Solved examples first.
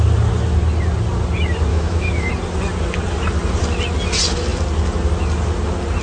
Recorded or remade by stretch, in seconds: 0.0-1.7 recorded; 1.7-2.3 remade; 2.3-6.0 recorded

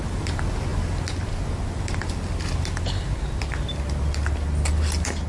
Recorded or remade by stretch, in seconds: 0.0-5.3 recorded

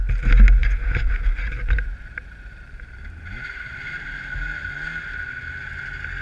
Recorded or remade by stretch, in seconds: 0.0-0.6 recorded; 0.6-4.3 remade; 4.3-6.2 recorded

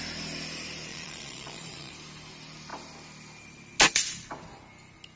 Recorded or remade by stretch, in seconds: 0.0-0.9 recorded; 0.9-1.9 remade; 1.9-5.2 recorded